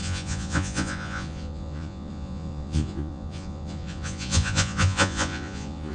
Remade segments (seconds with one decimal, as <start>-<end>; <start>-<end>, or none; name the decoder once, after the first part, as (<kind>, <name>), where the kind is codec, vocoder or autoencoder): 0.0-5.9 (vocoder, Vocos)